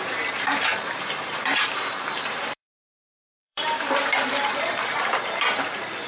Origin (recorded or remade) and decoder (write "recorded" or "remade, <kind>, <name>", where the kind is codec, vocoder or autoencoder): remade, vocoder, BigVGAN v2